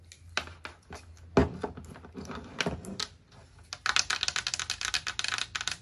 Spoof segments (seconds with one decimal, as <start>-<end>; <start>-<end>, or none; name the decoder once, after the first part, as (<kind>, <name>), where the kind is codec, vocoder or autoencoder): none